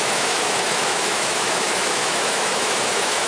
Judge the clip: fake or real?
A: fake